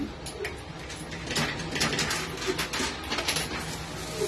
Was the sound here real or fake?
real